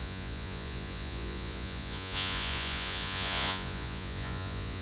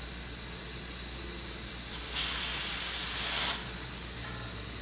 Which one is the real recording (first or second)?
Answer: second